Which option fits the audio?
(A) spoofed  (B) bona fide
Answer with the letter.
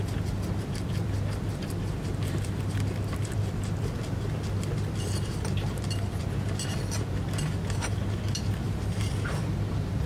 A